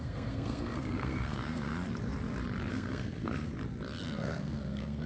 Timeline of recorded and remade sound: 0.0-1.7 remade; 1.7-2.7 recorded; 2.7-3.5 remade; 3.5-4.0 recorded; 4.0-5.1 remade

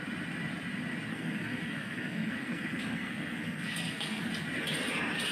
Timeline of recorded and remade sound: 0.0-1.1 recorded; 1.1-4.3 remade; 4.3-5.3 recorded

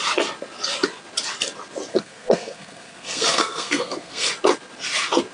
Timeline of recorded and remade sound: 0.0-1.9 recorded; 1.9-4.3 remade; 4.3-5.3 recorded

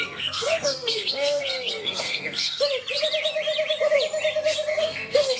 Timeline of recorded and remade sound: 0.0-2.6 remade; 2.6-4.7 recorded; 4.7-5.4 remade

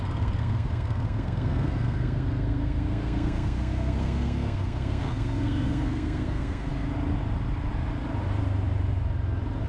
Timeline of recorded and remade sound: 0.0-6.7 remade; 6.7-9.7 recorded